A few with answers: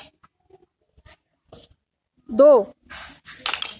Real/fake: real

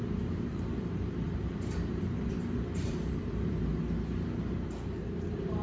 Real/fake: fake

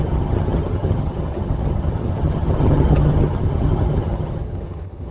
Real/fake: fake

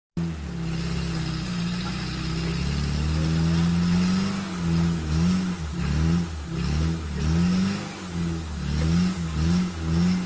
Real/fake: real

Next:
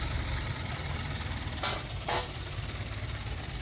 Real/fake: fake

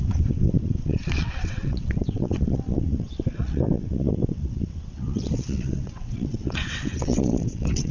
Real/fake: fake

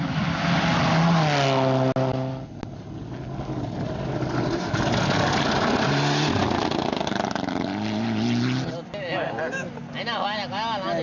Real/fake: real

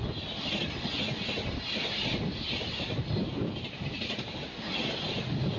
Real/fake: real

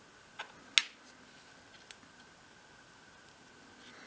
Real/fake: real